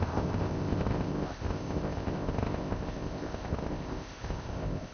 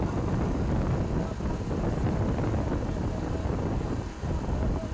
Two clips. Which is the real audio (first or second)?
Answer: second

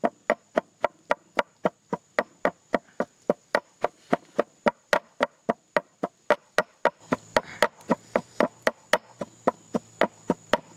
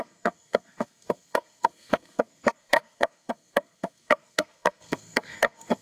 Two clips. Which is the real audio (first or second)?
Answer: first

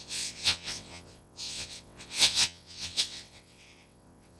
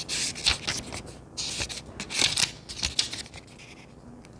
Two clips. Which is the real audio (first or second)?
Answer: second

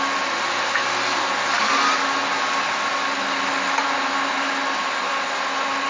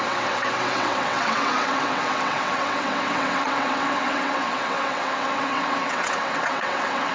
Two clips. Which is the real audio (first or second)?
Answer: first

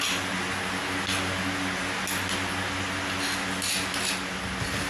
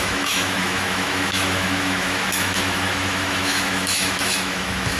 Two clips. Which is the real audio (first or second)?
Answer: first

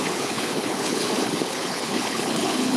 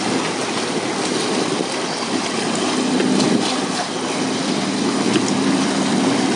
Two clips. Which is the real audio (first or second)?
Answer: second